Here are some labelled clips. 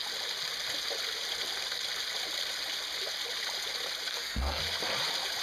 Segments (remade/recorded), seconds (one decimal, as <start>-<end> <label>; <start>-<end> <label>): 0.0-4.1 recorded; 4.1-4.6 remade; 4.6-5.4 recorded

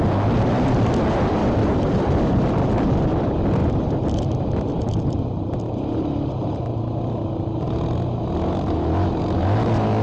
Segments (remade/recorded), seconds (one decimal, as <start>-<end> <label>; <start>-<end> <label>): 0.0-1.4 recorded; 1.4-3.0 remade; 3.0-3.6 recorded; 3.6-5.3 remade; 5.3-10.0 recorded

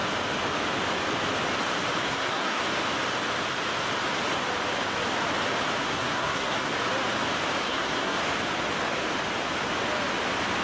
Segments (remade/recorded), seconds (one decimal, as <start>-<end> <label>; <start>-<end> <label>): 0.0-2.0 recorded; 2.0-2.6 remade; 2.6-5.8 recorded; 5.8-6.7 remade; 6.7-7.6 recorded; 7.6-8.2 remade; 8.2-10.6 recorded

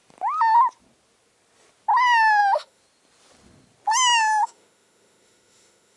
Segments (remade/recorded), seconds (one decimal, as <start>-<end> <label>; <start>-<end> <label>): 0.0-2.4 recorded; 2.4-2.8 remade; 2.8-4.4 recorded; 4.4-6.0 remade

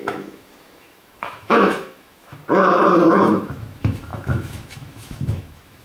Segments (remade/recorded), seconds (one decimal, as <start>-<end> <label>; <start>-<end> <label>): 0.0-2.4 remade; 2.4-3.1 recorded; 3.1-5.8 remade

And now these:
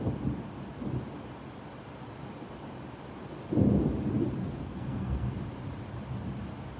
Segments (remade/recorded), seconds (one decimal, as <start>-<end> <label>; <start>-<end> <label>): 0.0-4.4 recorded; 4.4-5.4 remade; 5.4-6.8 recorded